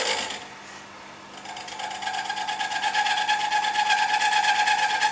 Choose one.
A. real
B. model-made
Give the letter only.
A